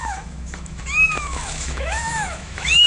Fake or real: fake